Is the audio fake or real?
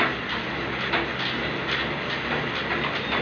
real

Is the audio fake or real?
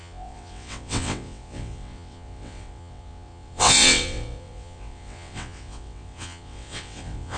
fake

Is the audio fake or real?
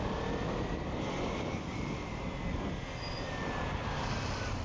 real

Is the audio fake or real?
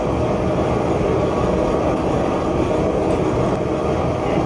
real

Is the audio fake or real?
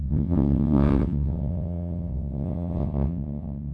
fake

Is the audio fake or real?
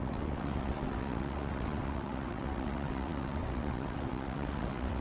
fake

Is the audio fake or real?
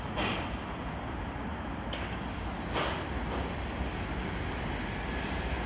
real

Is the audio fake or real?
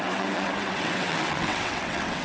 fake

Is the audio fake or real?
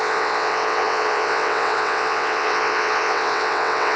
fake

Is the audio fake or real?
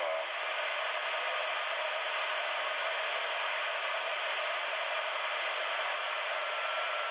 real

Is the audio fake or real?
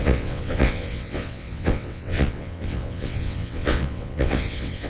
fake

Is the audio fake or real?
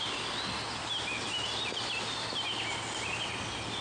real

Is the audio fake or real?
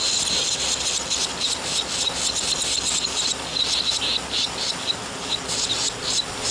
real